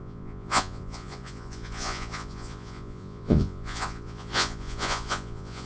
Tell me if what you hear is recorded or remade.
remade